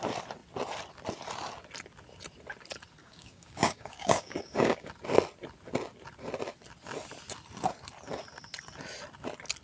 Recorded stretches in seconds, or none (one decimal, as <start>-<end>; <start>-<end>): 0.0-3.0; 4.9-9.6